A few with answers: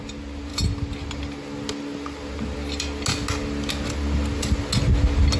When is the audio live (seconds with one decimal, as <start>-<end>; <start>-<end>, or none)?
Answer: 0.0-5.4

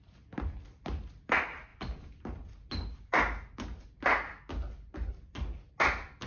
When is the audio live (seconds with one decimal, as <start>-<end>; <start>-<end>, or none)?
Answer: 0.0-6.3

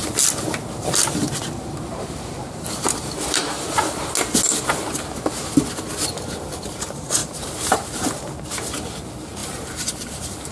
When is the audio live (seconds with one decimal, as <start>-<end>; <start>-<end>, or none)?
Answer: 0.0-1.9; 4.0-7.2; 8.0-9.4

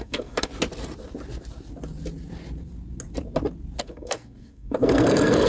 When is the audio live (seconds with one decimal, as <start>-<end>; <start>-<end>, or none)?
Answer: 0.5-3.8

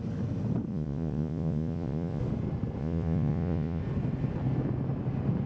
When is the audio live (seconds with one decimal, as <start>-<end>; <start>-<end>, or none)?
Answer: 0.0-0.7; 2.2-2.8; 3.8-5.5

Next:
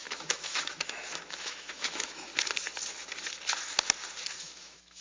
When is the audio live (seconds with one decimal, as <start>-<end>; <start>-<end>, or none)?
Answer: 2.3-4.4